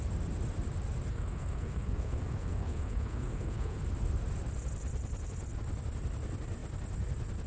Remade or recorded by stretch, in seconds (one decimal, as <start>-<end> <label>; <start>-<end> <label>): 0.0-1.1 recorded; 1.1-3.8 remade; 3.8-7.5 recorded

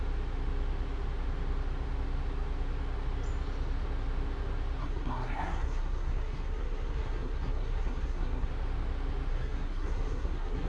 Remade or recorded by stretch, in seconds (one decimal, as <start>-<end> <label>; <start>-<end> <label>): 0.0-4.8 recorded; 4.8-8.5 remade; 8.5-9.3 recorded; 9.3-10.7 remade

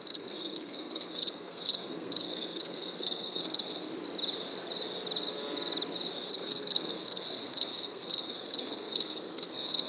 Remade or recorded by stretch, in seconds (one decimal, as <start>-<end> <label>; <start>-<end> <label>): 0.0-3.9 remade; 3.9-6.3 recorded; 6.3-9.9 remade

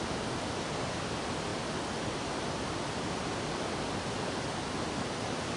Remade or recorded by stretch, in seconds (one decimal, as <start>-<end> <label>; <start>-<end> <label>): 0.0-5.6 recorded

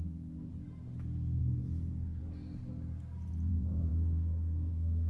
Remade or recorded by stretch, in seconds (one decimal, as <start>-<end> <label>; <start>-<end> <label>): 0.0-0.5 remade; 0.5-1.4 recorded; 1.4-2.2 remade; 2.2-3.5 recorded; 3.5-5.1 remade

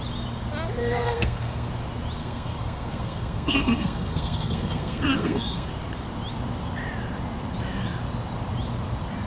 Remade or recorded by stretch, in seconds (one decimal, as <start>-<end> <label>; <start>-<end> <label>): 0.0-0.8 recorded; 0.8-1.7 remade; 1.7-2.2 recorded; 2.2-5.7 remade; 5.7-9.3 recorded

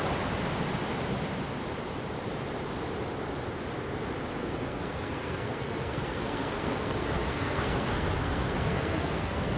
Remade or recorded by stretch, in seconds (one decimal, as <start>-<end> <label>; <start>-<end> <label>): 0.0-4.4 recorded; 4.4-9.6 remade

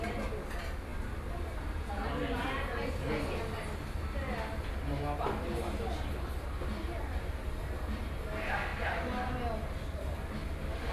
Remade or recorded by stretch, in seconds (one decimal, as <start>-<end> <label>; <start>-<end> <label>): 0.0-10.9 recorded